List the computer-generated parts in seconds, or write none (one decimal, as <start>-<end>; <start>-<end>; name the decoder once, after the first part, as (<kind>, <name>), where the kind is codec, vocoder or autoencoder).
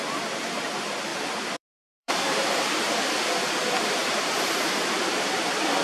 1.1-3.1 (vocoder, BigVGAN v2); 4.0-4.7